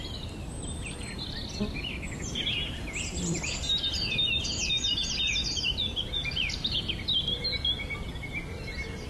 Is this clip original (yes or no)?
yes